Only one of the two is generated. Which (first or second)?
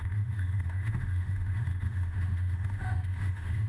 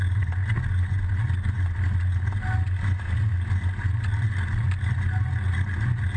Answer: first